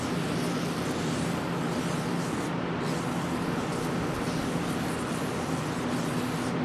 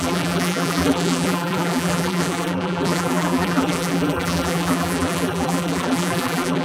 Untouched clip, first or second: first